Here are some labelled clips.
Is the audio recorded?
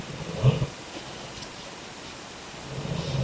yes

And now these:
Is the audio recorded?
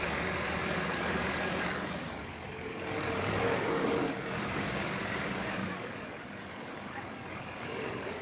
no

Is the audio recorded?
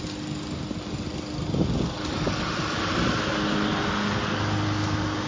yes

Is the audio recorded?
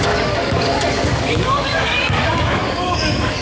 no